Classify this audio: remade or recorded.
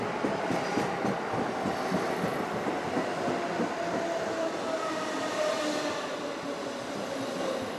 recorded